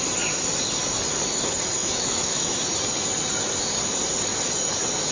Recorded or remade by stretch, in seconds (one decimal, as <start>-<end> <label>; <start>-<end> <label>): 0.0-1.8 recorded; 1.8-2.6 remade; 2.6-5.1 recorded